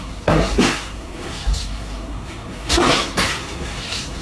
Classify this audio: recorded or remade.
remade